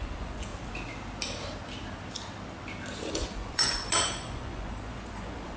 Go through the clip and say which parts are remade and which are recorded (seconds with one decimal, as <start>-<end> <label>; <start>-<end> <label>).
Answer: 0.0-0.5 remade; 0.5-3.1 recorded; 3.1-5.6 remade